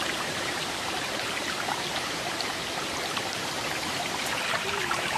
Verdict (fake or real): fake